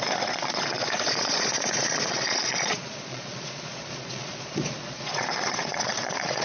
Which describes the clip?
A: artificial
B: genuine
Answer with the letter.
A